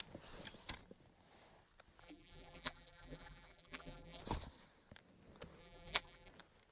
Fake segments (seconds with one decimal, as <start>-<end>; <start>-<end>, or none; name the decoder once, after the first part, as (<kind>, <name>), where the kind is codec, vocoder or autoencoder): 2.0-4.2 (vocoder, BigVGAN v2); 5.6-6.3